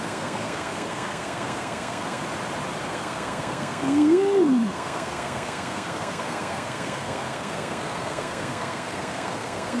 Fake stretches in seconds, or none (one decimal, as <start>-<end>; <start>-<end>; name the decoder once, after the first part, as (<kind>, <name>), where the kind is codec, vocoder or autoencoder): 0.0-2.2 (codec, SNAC); 2.8-9.8